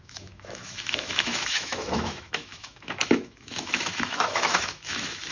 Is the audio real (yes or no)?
no